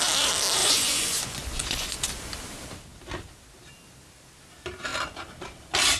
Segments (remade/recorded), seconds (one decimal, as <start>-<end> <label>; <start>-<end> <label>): 0.0-0.6 recorded; 0.6-2.3 remade; 2.3-6.0 recorded